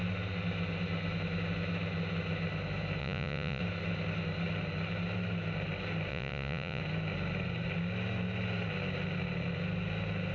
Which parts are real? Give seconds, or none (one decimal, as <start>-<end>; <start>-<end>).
0.0-3.0; 3.6-6.1; 6.8-10.3